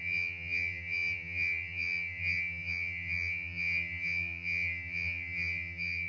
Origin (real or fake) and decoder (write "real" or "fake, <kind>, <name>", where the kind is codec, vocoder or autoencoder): fake, vocoder, HiFi-GAN